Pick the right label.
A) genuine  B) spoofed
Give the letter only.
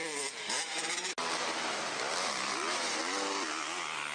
A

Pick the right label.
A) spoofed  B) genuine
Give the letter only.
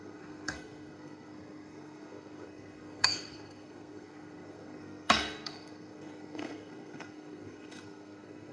A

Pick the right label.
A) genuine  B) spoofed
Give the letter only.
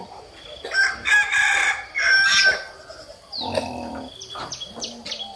A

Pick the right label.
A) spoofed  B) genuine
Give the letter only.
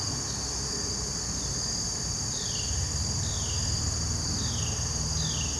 B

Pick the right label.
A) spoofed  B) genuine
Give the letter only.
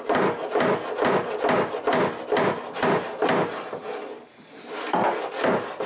B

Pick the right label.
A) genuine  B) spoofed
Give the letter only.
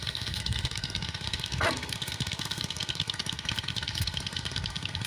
B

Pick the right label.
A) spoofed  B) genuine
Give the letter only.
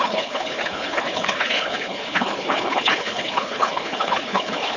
A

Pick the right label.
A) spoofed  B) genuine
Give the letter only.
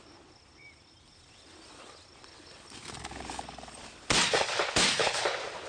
B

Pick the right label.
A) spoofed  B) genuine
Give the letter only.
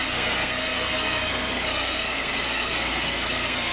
A